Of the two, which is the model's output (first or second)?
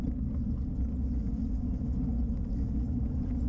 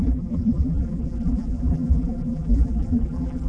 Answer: second